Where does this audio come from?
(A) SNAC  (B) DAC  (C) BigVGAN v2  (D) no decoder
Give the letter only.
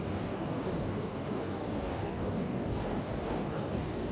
B